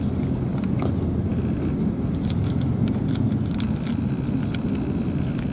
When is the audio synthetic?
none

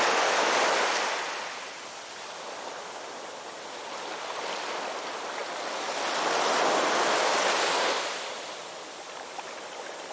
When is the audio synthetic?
0.0-10.1 (vocoder, BigVGAN v2)

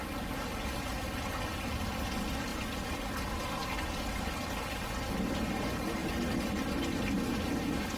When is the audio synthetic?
none

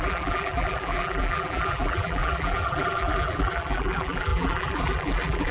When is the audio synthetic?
0.0-5.5 (vocoder, BigVGAN v2)

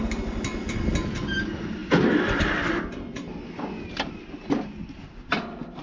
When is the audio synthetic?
none